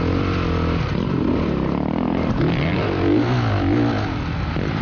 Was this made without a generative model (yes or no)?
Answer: yes